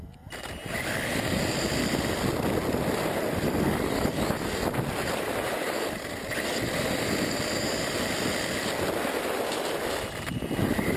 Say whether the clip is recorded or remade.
recorded